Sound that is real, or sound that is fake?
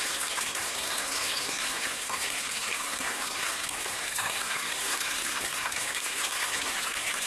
fake